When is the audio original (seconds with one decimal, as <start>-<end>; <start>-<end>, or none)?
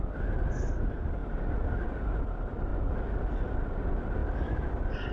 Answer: 0.0-2.7; 3.2-5.1